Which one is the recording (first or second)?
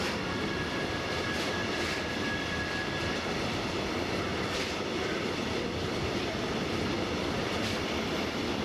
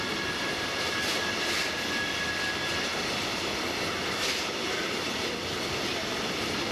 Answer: second